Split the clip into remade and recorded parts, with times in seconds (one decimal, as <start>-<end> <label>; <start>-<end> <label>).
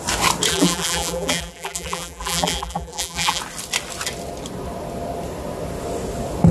0.0-0.5 recorded; 0.5-3.4 remade; 3.4-6.5 recorded